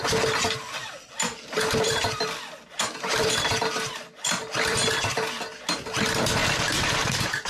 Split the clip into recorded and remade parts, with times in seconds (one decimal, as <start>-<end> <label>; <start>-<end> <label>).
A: 0.0-0.8 recorded; 0.8-4.8 remade; 4.8-6.4 recorded; 6.4-7.5 remade